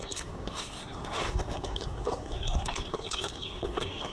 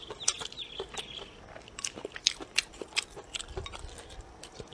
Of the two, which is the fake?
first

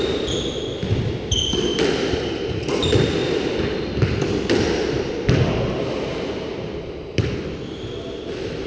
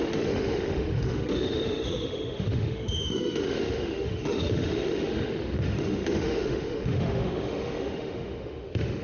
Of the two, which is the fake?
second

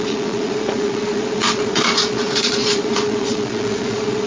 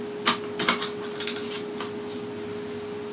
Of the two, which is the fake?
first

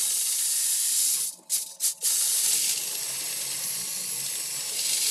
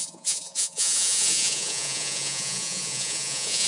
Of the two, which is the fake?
second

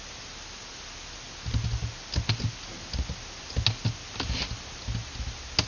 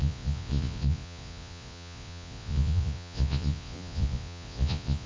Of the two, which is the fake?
second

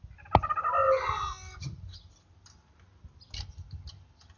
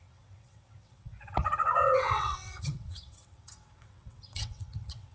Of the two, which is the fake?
second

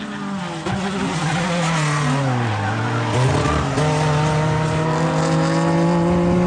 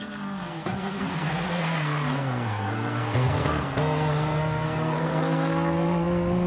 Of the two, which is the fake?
second